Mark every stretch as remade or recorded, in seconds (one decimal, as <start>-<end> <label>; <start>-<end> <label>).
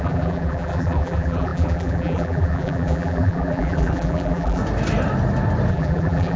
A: 0.0-4.6 remade; 4.6-5.7 recorded; 5.7-6.4 remade